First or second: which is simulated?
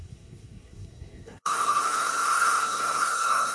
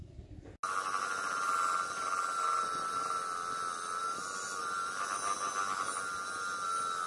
first